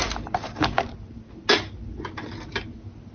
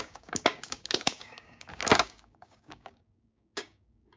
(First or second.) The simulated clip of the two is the second